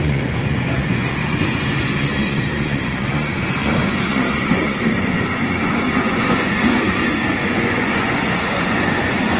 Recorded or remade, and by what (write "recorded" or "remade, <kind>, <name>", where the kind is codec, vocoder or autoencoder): remade, vocoder, Vocos